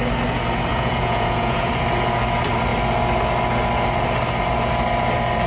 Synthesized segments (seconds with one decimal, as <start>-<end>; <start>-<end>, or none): 0.7-1.7